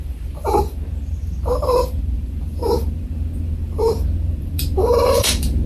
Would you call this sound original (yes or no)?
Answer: no